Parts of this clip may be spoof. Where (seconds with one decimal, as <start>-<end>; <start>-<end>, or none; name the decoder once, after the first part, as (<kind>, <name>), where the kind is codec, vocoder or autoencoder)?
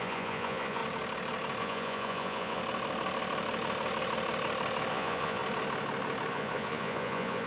0.0-0.8 (vocoder, Vocos); 1.6-2.6; 4.9-5.4; 6.3-7.5